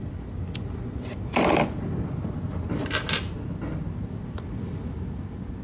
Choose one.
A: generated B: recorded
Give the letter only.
B